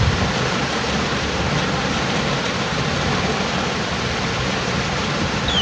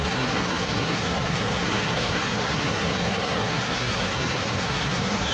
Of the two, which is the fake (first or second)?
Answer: second